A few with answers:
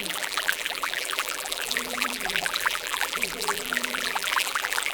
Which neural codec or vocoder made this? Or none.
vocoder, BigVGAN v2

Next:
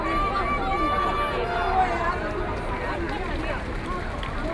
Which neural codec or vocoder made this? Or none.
none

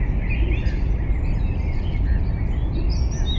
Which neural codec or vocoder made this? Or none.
none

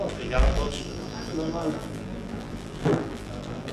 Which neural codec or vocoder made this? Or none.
vocoder, BigVGAN v2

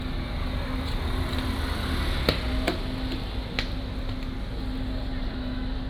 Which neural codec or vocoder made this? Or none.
none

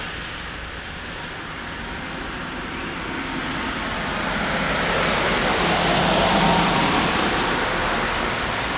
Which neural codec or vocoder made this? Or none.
none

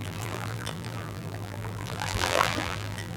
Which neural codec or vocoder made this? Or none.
vocoder, BigVGAN v2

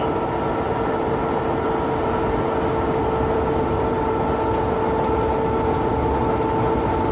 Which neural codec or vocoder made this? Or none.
none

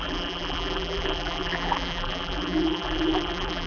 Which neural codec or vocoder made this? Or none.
vocoder, BigVGAN v2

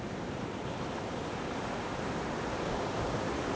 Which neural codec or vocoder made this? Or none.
vocoder, BigVGAN v2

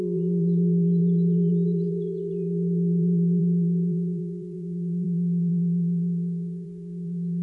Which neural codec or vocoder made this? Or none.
vocoder, BigVGAN v2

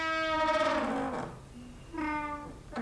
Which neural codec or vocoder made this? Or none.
none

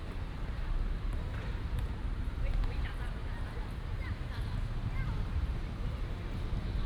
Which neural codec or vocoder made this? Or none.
vocoder, BigVGAN v2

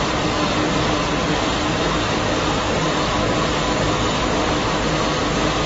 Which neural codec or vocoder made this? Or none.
none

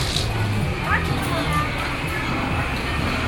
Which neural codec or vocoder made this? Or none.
none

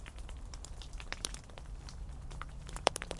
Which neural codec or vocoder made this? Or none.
vocoder, BigVGAN v2